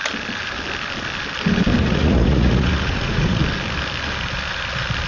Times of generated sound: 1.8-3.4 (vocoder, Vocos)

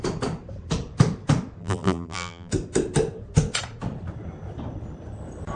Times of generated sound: 1.6-2.5 (vocoder, BigVGAN v2)

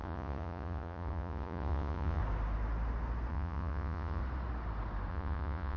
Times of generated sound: 0.0-2.2 (vocoder, Vocos); 3.3-4.2; 5.1-5.8